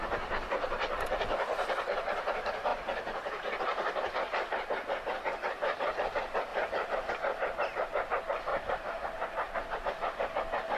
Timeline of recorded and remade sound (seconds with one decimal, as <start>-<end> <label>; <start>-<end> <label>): 0.0-6.5 recorded; 6.5-7.1 remade; 7.1-8.5 recorded; 8.5-9.8 remade; 9.8-10.8 recorded